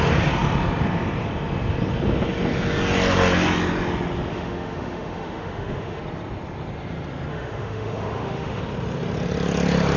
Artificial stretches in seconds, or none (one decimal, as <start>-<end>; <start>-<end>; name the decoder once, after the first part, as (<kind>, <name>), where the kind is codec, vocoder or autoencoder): 4.3-6.0 (autoencoder, DAC-VAE); 7.3-8.6